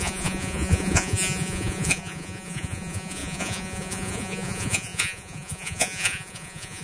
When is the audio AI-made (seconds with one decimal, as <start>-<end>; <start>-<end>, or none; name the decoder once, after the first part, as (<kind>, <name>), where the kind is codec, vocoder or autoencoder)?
0.0-6.8 (vocoder, Vocos)